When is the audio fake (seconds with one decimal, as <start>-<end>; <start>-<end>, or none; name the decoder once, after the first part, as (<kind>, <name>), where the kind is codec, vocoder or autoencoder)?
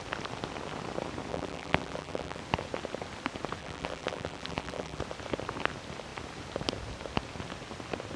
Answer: 1.3-2.4 (vocoder, BigVGAN v2); 3.6-5.0